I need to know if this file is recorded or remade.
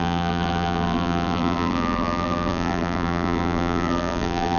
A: remade